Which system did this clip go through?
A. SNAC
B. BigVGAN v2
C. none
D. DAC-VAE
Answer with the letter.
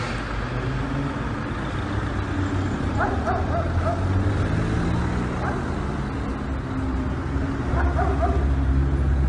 C